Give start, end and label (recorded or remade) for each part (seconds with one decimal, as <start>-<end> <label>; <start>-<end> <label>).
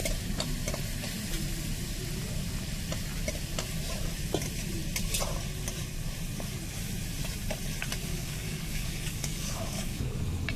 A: 0.0-8.1 recorded; 8.1-10.2 remade; 10.2-10.6 recorded